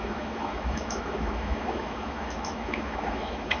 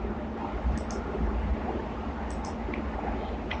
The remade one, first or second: first